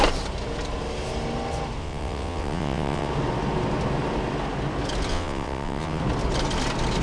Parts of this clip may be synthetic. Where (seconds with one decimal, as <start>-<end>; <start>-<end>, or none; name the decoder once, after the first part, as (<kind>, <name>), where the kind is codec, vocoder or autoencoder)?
1.8-3.1 (vocoder, WaveNeXt); 5.1-6.0